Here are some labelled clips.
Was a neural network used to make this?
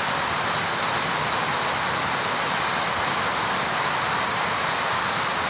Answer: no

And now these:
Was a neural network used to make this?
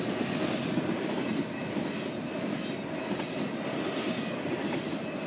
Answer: no